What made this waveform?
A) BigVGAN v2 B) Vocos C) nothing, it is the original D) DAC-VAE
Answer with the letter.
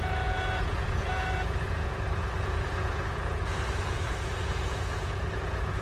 B